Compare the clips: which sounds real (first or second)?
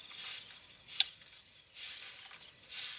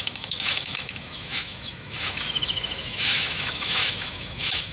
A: first